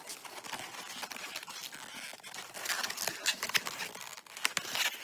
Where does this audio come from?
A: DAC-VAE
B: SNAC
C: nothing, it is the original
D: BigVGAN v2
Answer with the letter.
C